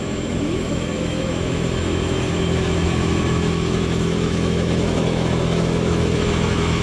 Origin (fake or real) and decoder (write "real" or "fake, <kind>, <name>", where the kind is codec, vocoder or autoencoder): fake, autoencoder, DAC-VAE